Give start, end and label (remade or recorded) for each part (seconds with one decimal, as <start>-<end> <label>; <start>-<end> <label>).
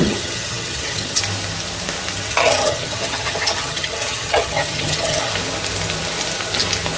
0.0-1.2 remade; 1.2-2.3 recorded; 2.3-5.3 remade; 5.3-7.0 recorded